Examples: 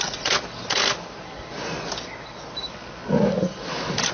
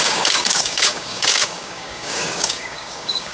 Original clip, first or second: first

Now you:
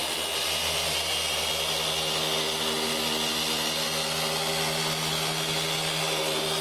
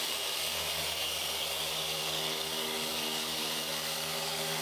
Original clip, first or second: first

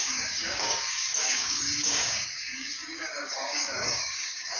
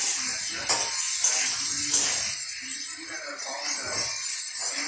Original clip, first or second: second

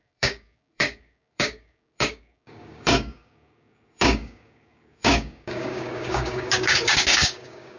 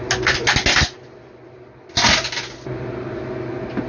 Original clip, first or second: second